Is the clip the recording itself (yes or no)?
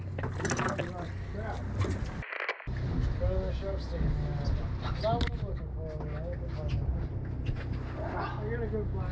yes